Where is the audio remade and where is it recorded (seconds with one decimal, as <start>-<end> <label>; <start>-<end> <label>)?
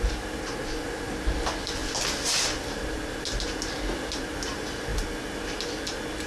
0.0-6.3 recorded